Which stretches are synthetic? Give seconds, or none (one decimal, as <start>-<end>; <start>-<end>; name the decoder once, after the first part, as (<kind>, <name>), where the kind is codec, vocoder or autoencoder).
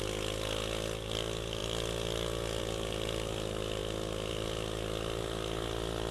none